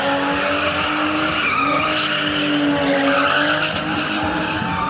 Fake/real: real